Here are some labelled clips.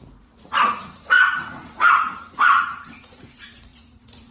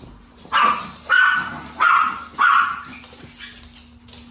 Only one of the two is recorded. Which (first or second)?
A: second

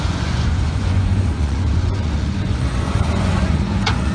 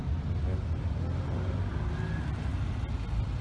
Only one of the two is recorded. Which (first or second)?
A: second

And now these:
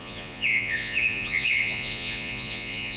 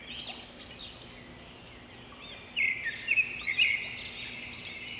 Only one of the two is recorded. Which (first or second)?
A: second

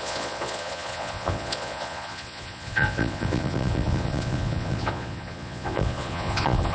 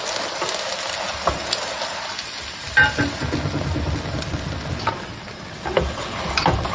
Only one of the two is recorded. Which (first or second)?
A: second